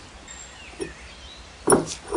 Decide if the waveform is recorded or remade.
recorded